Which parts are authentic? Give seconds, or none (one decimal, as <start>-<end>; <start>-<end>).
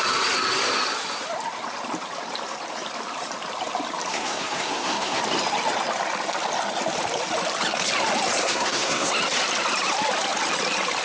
0.0-4.1; 5.2-8.4; 9.1-11.0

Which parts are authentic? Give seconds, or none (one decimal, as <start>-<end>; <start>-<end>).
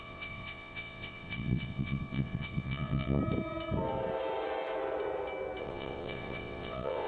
3.2-5.6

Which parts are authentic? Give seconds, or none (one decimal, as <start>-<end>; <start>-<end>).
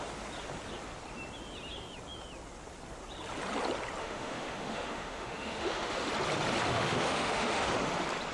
0.0-4.0; 6.1-6.7; 7.7-8.3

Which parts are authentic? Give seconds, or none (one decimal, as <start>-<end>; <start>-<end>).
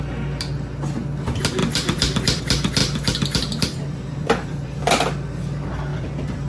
0.0-1.6; 2.4-2.8; 4.8-5.9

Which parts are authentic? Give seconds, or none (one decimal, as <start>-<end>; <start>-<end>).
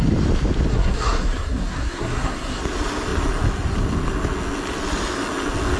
0.0-0.7; 2.6-5.8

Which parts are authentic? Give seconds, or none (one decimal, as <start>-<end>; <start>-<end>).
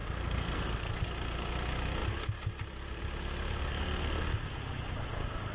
1.0-3.7; 4.2-5.5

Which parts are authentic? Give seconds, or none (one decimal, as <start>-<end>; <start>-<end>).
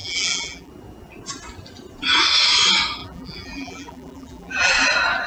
0.7-3.0; 4.7-5.3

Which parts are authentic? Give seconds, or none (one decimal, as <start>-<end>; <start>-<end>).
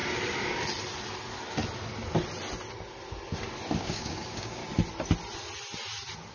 0.0-3.8; 4.6-6.3